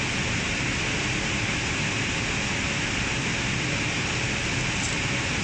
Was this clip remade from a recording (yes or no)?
no